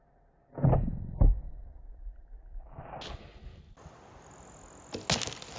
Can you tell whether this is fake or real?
real